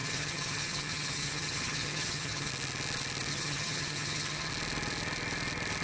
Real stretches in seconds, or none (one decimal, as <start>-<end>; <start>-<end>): 2.5-3.3; 4.5-5.8